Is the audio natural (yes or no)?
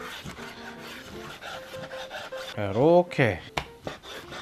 yes